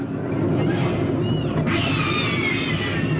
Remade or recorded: recorded